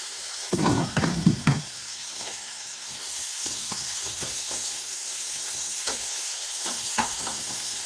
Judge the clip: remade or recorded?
remade